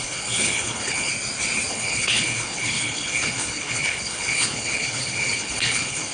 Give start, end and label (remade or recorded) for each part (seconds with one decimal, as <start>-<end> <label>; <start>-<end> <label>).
0.0-1.1 remade; 1.1-1.7 recorded; 1.7-6.1 remade